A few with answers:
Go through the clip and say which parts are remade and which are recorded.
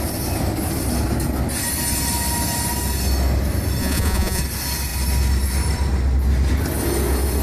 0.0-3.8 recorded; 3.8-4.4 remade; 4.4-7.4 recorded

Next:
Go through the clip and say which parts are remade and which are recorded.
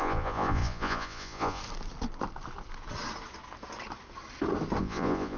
0.0-1.6 remade; 1.6-4.8 recorded; 4.8-5.4 remade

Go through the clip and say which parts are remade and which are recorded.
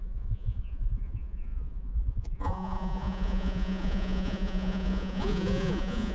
0.0-6.1 remade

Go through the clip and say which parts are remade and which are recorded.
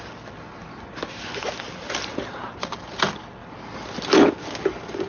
0.0-5.1 recorded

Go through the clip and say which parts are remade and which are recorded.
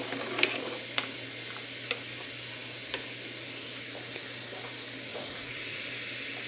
0.0-5.1 recorded; 5.1-5.9 remade; 5.9-6.5 recorded